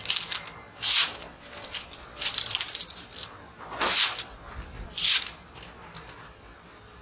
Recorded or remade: recorded